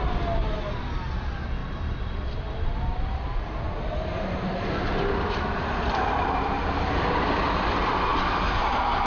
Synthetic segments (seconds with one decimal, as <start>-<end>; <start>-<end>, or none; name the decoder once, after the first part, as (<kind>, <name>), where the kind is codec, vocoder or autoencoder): 1.6-6.9 (vocoder, BigVGAN v2)